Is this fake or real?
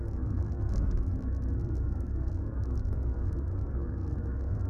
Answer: fake